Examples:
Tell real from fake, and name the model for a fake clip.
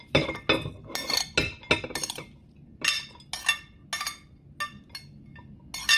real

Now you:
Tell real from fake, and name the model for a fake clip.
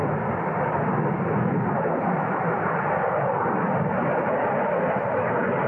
real